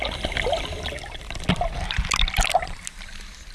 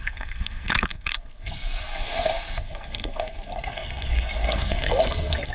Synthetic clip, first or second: second